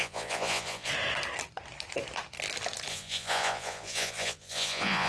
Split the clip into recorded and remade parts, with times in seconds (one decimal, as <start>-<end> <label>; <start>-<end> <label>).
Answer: 0.0-0.9 remade; 0.9-2.9 recorded; 2.9-5.1 remade